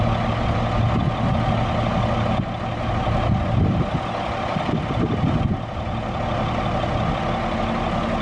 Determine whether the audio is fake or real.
real